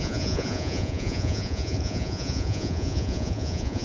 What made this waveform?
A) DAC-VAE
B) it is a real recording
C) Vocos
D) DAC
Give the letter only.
C